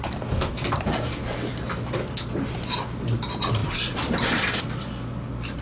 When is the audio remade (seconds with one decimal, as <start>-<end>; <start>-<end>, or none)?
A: 3.6-4.6